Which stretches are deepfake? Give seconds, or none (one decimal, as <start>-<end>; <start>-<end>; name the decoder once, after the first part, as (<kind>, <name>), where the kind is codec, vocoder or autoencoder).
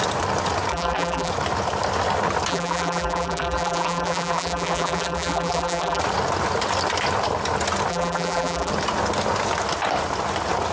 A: 0.7-1.3 (vocoder, BigVGAN v2); 2.5-6.0; 7.9-8.7